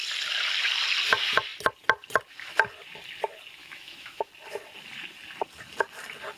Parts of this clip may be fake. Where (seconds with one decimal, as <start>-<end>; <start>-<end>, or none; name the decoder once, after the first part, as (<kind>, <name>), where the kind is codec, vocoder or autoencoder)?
3.6-4.3 (autoencoder, DAC-VAE)